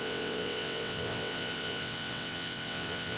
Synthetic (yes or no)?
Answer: yes